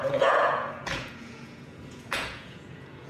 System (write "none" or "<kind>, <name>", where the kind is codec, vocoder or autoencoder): vocoder, Vocos